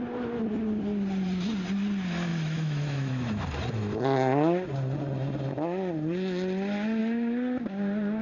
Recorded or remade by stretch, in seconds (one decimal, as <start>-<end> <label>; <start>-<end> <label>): 0.0-2.3 recorded; 2.3-3.4 remade; 3.4-7.0 recorded; 7.0-7.6 remade; 7.6-8.2 recorded